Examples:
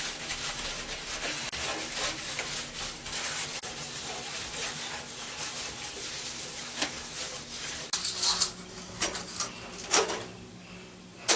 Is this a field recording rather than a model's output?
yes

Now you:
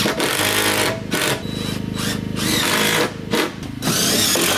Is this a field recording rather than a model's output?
yes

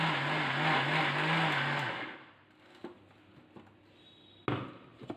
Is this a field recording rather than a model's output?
yes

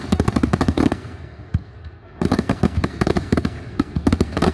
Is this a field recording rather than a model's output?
no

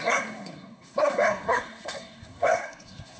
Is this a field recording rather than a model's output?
no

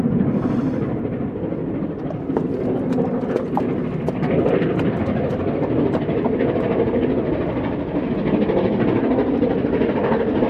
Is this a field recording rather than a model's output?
yes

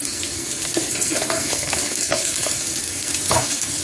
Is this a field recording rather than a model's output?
no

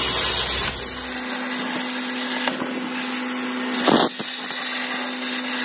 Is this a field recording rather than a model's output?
yes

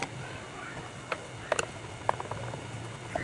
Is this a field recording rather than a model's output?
yes